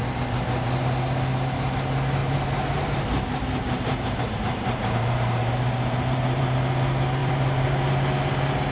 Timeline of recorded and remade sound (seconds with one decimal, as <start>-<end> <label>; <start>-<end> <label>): 0.0-2.2 recorded; 2.2-6.6 remade; 6.6-7.2 recorded; 7.2-7.7 remade; 7.7-8.7 recorded